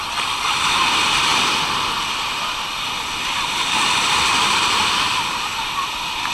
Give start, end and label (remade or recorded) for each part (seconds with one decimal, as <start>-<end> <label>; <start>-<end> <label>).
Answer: 0.0-6.3 recorded